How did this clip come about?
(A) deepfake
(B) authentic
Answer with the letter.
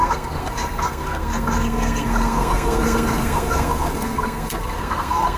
A